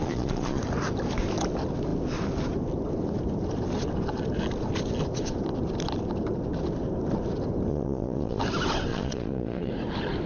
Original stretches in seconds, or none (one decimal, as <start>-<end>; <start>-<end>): 0.6-7.7; 8.4-8.9; 9.7-10.3